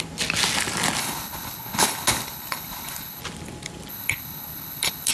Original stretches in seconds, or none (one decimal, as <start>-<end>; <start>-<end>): 0.0-1.0; 3.2-3.9